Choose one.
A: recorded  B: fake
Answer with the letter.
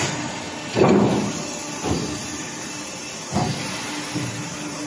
A